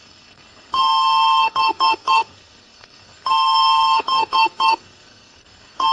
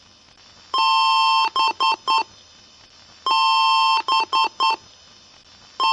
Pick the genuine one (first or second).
second